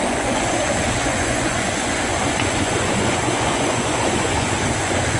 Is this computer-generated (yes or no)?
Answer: yes